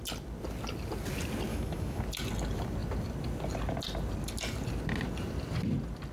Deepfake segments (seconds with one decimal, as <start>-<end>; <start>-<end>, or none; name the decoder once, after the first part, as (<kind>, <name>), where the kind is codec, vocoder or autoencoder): 1.5-2.0 (autoencoder, DAC-VAE)